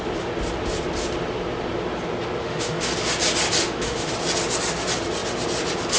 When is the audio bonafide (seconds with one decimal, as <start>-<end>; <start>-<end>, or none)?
0.0-2.4; 2.9-3.6; 4.1-6.0